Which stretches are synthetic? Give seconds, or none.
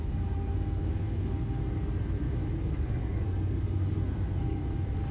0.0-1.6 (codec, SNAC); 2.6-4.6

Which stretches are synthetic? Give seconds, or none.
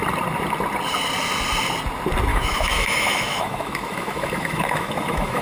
2.3-5.4 (autoencoder, DAC-VAE)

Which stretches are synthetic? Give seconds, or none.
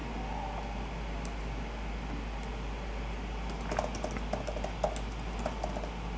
none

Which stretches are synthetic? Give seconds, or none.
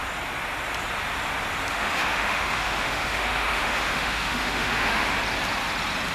1.7-5.1 (autoencoder, DAC-VAE)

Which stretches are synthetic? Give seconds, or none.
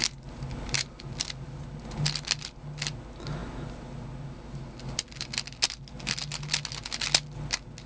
none